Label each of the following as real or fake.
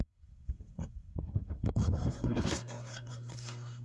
fake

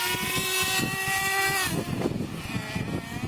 real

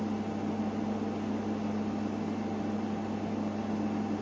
real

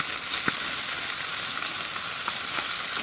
real